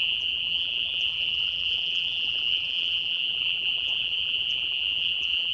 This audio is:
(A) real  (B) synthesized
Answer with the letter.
B